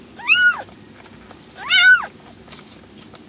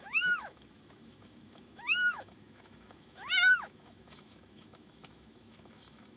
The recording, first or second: first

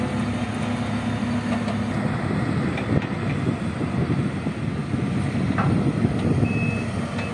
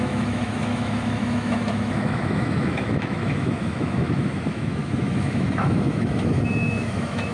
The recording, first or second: first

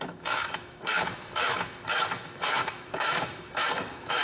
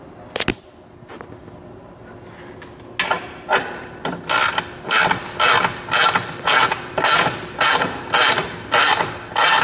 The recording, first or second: second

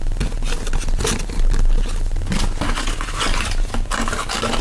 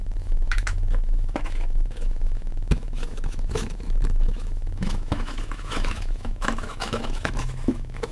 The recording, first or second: first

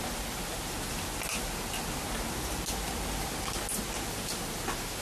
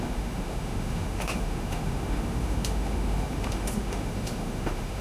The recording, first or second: first